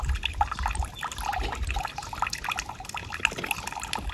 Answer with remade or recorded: recorded